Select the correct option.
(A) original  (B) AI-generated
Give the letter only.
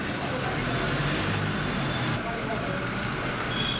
A